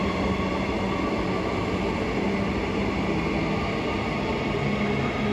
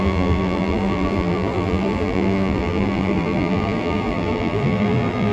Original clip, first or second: first